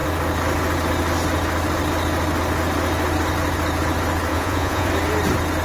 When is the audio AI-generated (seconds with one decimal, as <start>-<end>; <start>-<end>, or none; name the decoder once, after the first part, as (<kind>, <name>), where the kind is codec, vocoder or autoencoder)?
4.3-4.9 (vocoder, Vocos)